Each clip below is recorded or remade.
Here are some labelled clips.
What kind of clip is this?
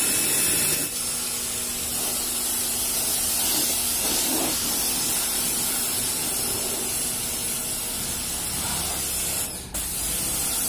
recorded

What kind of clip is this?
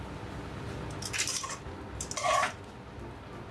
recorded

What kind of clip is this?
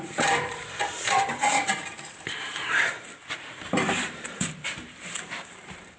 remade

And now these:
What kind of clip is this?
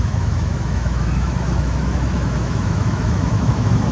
remade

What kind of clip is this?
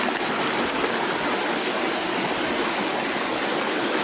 recorded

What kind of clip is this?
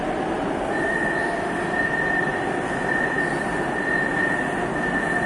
recorded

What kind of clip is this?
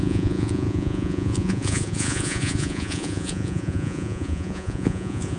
remade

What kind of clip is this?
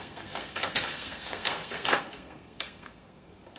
remade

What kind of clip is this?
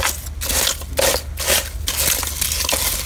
recorded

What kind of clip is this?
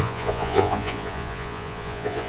remade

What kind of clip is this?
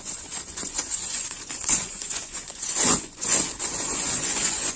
remade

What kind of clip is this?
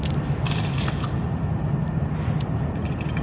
recorded